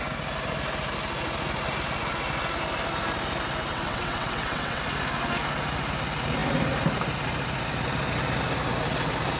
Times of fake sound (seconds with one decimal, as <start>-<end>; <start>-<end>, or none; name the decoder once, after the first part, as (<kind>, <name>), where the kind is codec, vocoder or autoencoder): 3.7-4.8 (vocoder, WaveNeXt)